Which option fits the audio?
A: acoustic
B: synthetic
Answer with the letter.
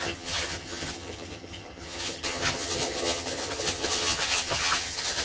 B